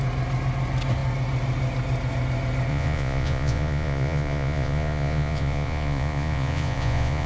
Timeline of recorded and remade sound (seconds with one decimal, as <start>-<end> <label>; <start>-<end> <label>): 0.0-2.7 recorded; 2.7-7.3 remade